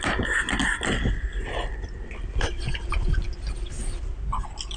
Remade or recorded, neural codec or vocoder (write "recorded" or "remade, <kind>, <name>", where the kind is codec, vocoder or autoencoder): recorded